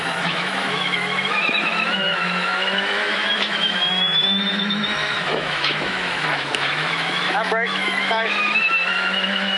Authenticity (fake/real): fake